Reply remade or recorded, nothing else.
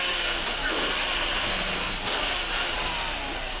recorded